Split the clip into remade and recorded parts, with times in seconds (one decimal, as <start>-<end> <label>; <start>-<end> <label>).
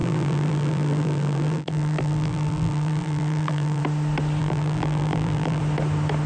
0.0-3.8 remade; 3.8-4.4 recorded; 4.4-5.6 remade; 5.6-6.3 recorded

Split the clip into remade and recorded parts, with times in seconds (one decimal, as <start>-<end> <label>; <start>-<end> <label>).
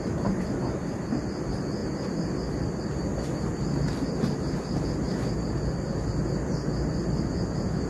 0.0-7.9 recorded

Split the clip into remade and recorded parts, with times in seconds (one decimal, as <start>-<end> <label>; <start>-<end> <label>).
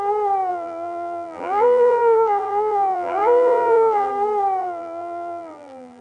0.0-0.5 recorded; 0.5-4.1 remade; 4.1-4.6 recorded; 4.6-6.0 remade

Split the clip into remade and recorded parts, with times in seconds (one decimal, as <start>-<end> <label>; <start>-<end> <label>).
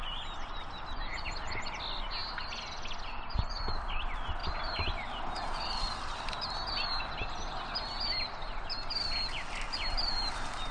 0.0-4.4 recorded; 4.4-7.0 remade; 7.0-10.7 recorded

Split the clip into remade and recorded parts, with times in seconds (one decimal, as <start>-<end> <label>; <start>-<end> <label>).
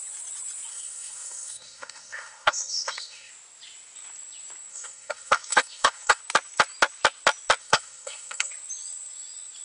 0.0-0.7 recorded; 0.7-3.3 remade; 3.3-4.7 recorded; 4.7-6.2 remade; 6.2-7.6 recorded; 7.6-8.5 remade; 8.5-9.6 recorded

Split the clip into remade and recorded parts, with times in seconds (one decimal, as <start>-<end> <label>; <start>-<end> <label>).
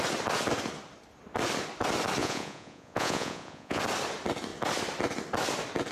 0.0-2.2 recorded; 2.2-3.8 remade; 3.8-5.9 recorded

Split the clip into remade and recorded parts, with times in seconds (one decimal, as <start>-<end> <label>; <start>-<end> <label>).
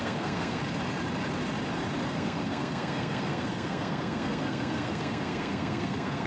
0.0-0.6 remade; 0.6-2.1 recorded; 2.1-6.3 remade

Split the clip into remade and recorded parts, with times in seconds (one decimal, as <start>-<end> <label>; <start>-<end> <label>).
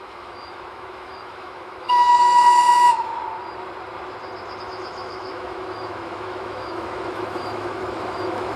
0.0-3.1 remade; 3.1-4.6 recorded; 4.6-8.6 remade